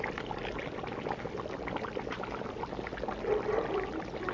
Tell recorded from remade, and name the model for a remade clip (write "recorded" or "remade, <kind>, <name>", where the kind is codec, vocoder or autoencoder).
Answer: recorded